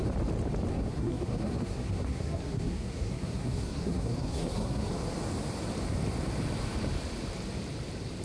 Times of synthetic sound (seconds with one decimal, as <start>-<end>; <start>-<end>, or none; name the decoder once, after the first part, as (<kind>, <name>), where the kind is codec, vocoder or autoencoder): 0.7-4.9 (codec, SNAC)